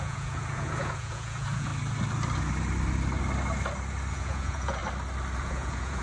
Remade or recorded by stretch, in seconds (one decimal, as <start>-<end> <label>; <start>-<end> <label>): 0.0-1.7 remade; 1.7-4.1 recorded; 4.1-4.8 remade; 4.8-5.4 recorded; 5.4-6.0 remade